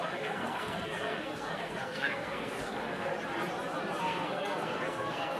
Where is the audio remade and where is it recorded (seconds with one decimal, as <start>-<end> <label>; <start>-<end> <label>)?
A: 0.0-3.1 remade; 3.1-4.0 recorded; 4.0-5.4 remade